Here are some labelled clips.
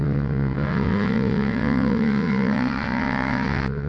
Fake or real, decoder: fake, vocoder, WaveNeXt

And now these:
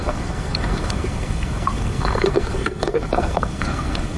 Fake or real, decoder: fake, codec, SNAC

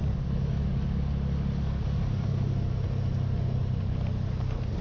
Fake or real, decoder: real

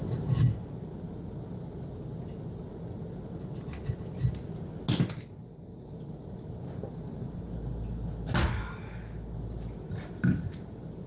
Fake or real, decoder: real